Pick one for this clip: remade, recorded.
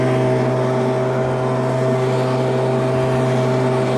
recorded